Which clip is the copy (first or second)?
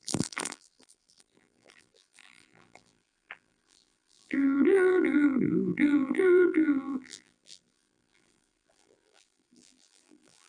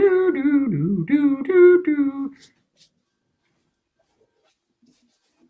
first